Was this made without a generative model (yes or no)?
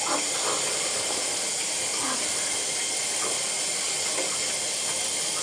yes